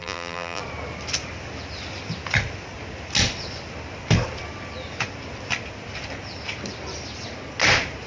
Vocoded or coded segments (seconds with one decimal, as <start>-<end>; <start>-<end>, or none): 0.0-0.6